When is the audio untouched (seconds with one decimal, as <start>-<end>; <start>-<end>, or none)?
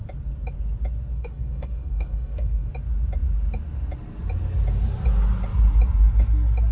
0.0-1.1; 2.7-6.7